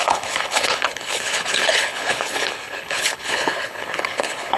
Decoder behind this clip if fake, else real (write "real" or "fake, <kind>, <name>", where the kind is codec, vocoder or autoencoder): fake, codec, HILCodec